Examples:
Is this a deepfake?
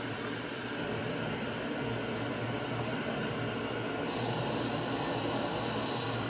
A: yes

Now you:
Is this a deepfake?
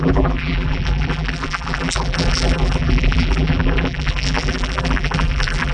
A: yes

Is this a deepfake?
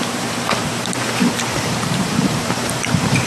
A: yes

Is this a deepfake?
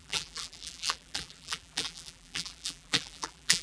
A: yes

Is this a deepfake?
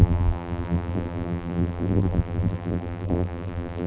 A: yes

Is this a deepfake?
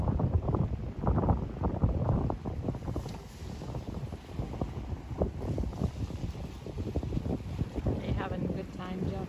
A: no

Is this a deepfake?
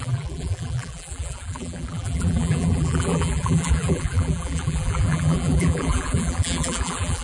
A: yes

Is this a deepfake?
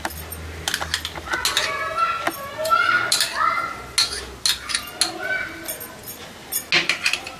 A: no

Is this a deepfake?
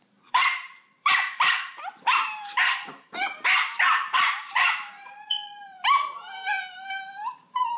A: yes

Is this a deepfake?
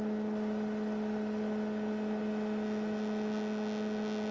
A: no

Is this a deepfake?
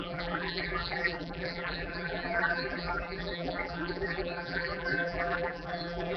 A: yes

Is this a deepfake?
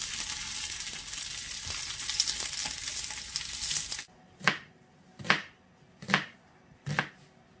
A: no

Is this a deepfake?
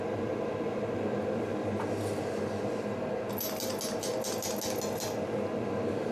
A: no